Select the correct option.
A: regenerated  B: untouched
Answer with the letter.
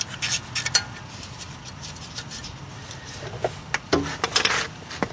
B